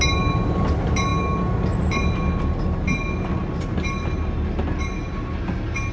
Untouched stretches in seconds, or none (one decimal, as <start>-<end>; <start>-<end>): 0.0-5.9